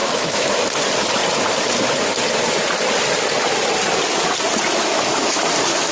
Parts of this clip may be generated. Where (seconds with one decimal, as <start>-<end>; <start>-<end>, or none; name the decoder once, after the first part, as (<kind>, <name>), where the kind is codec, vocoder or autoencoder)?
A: 0.0-0.5 (autoencoder, DAC-VAE); 4.8-5.4